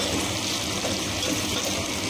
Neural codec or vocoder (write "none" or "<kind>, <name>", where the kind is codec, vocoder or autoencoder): none